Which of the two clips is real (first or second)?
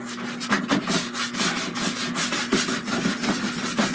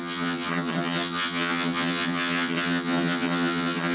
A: first